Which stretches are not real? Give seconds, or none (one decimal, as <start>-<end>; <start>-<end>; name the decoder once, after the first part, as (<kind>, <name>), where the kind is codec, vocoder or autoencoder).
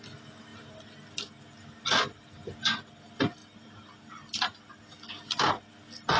none